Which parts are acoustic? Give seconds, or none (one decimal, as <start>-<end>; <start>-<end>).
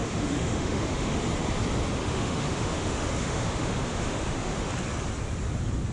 1.2-2.0; 4.7-5.9